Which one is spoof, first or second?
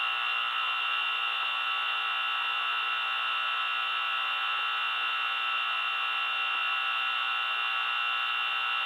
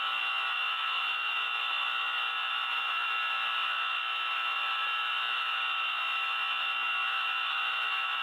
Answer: second